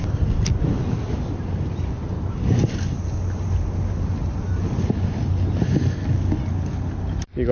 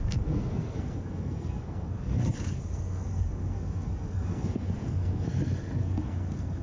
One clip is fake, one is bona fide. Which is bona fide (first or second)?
first